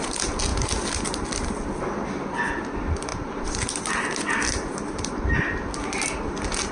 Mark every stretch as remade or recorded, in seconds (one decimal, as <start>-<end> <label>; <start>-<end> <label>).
0.0-6.7 recorded